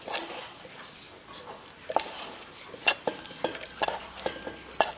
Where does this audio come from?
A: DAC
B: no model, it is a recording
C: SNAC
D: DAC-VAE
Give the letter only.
B